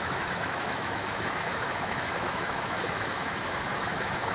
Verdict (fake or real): fake